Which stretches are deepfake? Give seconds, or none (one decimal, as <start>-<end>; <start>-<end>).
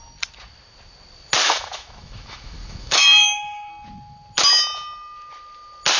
1.4-3.7